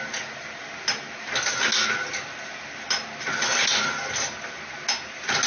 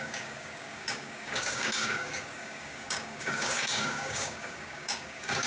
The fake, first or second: second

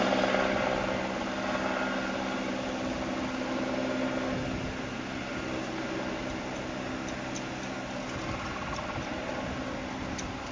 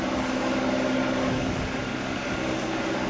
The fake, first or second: second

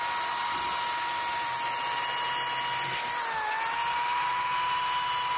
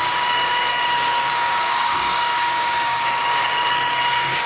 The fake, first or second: second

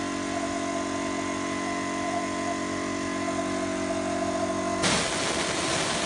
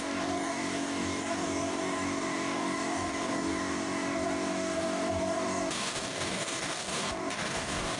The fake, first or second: second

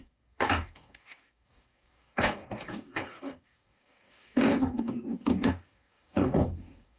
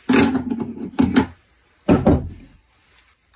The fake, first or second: first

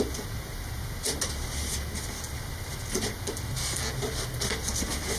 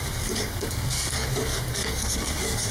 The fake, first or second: second